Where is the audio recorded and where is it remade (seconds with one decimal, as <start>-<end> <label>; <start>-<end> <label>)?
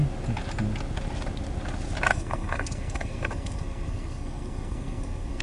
0.0-2.1 recorded; 2.1-5.4 remade